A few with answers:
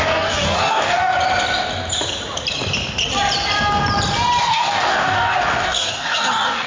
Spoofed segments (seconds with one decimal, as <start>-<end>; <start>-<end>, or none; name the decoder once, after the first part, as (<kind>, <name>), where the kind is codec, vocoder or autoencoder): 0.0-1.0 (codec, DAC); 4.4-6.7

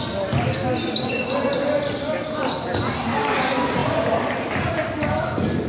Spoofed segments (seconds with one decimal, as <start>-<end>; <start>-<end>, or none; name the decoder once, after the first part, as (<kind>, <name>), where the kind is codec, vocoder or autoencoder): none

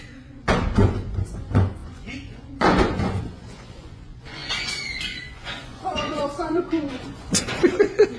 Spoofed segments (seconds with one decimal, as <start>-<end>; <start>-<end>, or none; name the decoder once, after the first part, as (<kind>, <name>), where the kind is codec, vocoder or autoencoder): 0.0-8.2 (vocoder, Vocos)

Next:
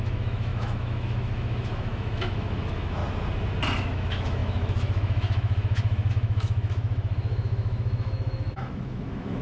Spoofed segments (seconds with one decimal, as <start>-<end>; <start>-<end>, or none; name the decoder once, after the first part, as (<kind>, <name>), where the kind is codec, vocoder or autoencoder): 0.0-3.0 (autoencoder, DAC-VAE); 3.8-9.4

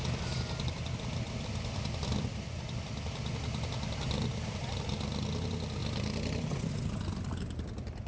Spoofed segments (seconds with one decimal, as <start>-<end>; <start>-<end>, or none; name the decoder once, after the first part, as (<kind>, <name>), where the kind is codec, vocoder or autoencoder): none

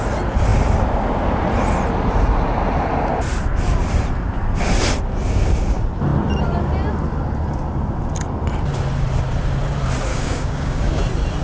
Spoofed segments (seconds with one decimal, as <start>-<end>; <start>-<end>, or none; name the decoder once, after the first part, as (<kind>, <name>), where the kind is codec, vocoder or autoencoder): 10.1-11.0 (codec, DAC)